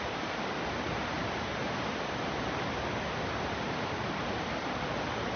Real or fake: real